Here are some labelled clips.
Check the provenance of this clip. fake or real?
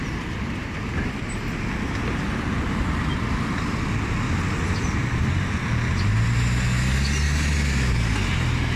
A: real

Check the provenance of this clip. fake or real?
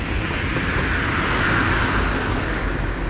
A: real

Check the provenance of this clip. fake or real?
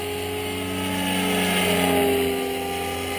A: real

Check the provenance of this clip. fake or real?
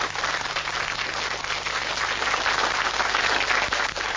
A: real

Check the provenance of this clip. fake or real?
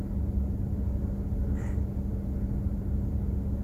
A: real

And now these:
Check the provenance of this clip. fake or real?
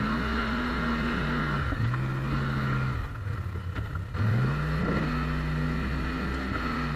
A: real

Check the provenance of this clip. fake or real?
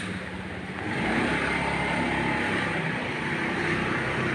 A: real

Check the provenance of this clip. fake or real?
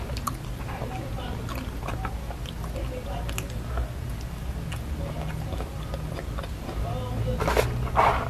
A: real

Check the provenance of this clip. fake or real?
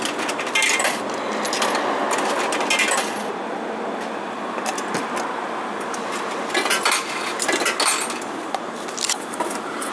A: real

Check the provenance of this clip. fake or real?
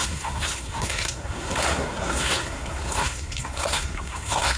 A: fake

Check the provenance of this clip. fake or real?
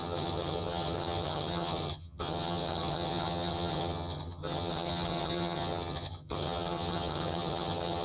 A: fake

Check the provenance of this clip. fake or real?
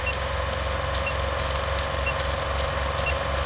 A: real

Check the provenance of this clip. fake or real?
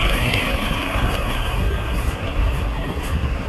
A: fake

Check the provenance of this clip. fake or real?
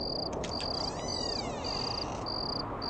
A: real